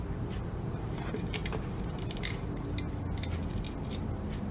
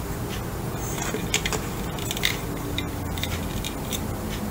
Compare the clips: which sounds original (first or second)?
second